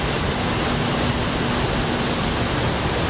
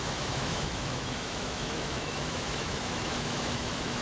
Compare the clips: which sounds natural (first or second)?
first